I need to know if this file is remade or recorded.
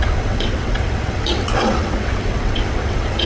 remade